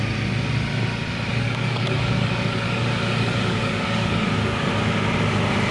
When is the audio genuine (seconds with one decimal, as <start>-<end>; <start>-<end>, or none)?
0.0-1.3; 4.7-5.7